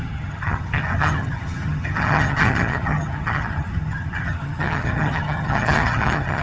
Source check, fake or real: fake